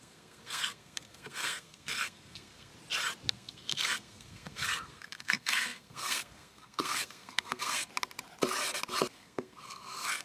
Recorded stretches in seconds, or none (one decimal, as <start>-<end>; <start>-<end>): 2.7-3.3; 7.9-9.1